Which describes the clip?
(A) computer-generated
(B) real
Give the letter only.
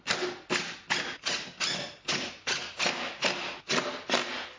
B